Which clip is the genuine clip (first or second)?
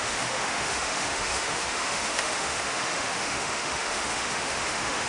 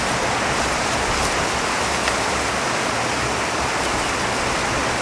second